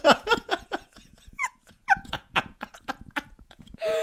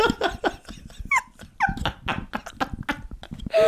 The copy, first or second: first